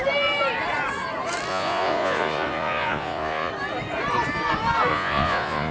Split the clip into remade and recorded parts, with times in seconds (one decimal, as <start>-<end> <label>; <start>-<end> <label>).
0.0-1.5 recorded; 1.5-3.5 remade; 3.5-4.9 recorded; 4.9-5.7 remade